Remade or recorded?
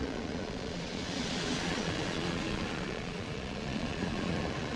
remade